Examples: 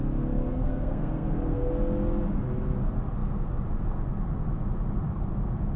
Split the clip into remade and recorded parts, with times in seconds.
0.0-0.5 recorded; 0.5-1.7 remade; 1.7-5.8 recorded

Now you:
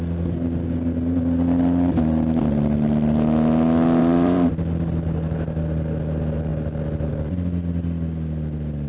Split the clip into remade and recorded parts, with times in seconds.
0.0-4.0 recorded; 4.0-4.5 remade; 4.5-8.9 recorded

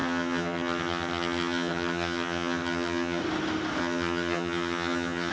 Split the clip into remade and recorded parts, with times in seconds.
0.0-3.2 remade; 3.2-3.8 recorded; 3.8-5.3 remade

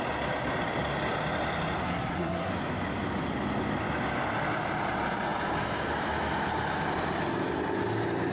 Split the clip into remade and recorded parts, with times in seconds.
0.0-1.8 recorded; 1.8-2.5 remade; 2.5-8.3 recorded

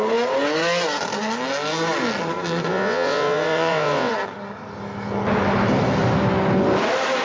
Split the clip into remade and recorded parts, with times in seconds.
0.0-2.7 recorded; 2.7-4.1 remade; 4.1-7.2 recorded

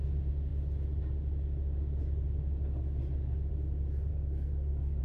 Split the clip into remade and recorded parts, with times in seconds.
0.0-4.1 recorded; 4.1-5.0 remade